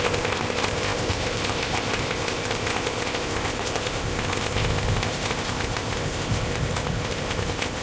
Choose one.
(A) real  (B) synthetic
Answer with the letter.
B